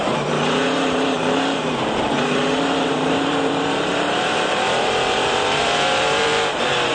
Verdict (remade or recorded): remade